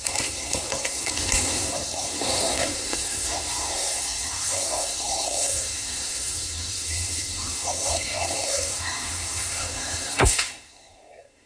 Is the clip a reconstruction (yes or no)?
yes